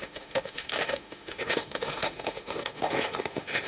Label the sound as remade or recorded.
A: remade